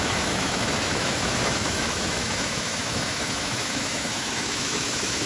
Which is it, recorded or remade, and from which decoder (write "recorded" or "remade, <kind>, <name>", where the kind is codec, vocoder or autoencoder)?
remade, autoencoder, DAC-VAE